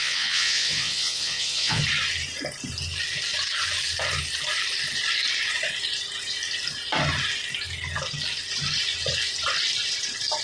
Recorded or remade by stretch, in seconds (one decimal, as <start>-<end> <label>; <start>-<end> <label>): 0.0-1.8 remade; 1.8-10.4 recorded